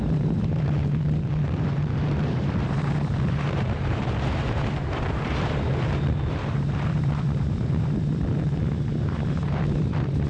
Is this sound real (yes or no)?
no